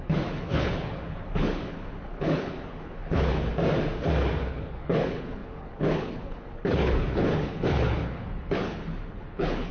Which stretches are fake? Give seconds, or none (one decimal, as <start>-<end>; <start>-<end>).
0.0-3.5; 4.5-9.7